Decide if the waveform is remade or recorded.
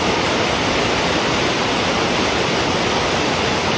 recorded